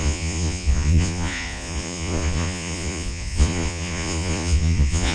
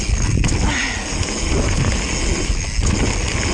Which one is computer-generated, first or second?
first